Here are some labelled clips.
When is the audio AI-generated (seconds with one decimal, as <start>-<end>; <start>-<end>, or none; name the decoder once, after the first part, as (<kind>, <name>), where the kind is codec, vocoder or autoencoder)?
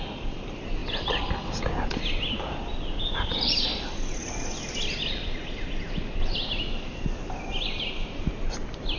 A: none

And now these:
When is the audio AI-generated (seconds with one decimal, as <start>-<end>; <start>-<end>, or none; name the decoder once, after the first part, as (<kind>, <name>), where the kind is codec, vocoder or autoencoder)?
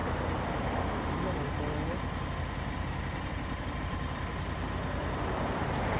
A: 3.6-4.3 (vocoder, BigVGAN v2); 5.3-6.0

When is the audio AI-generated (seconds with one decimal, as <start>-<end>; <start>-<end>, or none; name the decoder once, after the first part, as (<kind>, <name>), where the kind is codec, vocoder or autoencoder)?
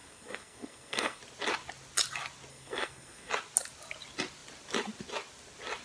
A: 0.0-1.2 (codec, SNAC); 2.5-3.3